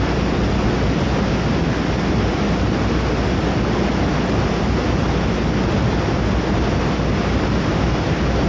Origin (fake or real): real